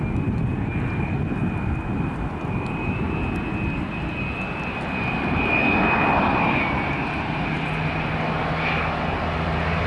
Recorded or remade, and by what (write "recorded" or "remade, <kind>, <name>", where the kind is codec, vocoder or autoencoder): recorded